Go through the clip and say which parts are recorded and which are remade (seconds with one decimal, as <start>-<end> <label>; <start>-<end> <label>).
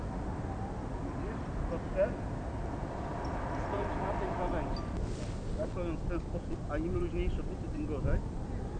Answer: 0.0-8.8 recorded